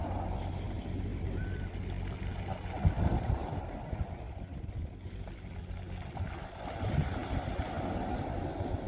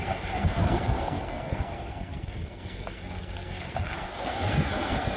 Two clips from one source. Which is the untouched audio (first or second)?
first